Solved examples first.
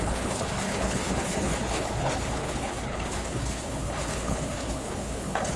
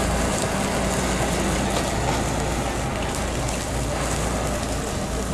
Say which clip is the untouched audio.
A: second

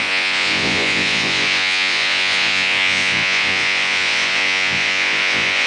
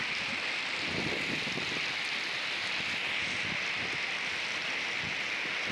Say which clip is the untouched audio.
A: second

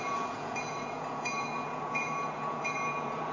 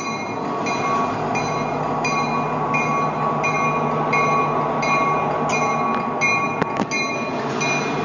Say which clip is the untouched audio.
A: second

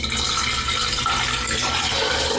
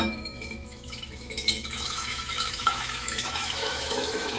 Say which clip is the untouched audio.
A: first